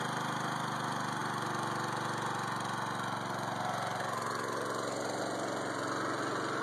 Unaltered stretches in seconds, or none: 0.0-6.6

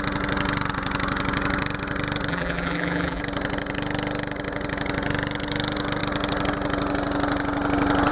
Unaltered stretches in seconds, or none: 0.0-2.3; 3.2-8.1